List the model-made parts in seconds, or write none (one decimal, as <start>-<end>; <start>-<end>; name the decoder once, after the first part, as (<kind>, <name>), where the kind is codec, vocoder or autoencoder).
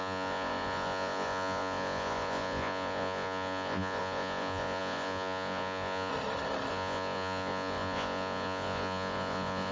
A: 0.0-6.1 (vocoder, Vocos); 6.7-9.7